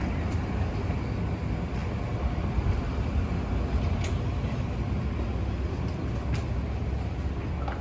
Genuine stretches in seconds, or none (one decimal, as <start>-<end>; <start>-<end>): 0.0-7.8